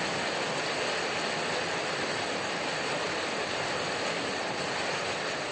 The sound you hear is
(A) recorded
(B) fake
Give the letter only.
A